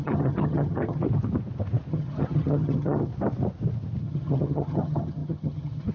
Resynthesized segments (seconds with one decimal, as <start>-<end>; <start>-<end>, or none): 0.0-1.0; 1.9-3.1; 4.0-5.9

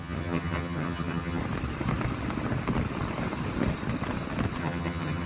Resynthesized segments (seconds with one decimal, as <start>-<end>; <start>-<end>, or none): 0.0-1.4; 4.6-5.3